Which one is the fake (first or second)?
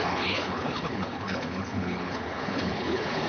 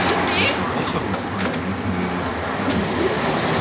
first